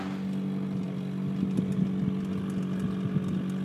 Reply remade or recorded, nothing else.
recorded